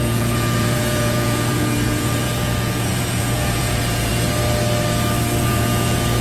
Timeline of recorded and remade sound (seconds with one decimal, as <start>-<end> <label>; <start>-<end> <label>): 0.0-4.1 remade; 4.1-5.4 recorded; 5.4-6.2 remade